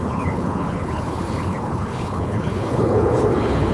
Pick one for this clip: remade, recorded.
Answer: remade